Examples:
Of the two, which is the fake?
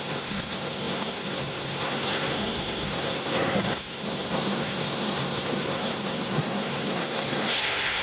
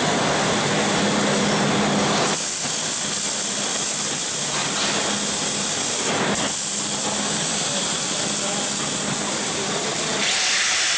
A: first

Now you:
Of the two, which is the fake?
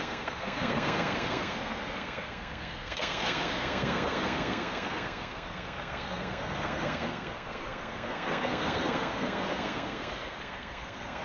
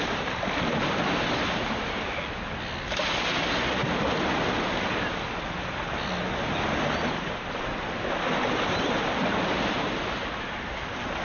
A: first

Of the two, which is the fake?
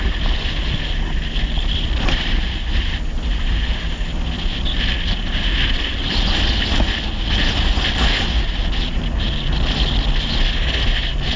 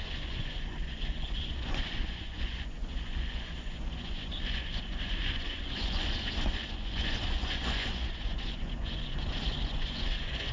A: second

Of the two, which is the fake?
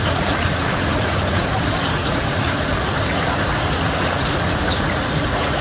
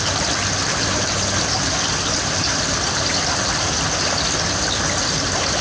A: first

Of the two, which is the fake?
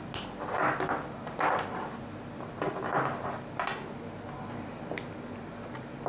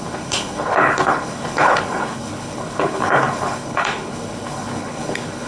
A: second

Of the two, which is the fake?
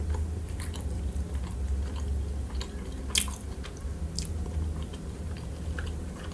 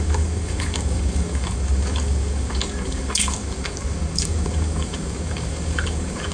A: second